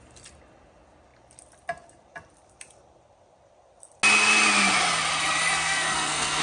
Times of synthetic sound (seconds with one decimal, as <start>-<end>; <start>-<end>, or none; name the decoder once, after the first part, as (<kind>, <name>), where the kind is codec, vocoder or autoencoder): 5.5-6.4 (codec, SNAC)